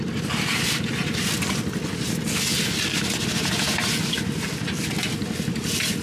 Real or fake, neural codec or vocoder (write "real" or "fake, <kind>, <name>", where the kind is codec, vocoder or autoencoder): real